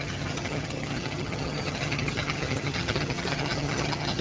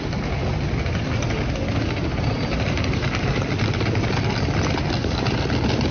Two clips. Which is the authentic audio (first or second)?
second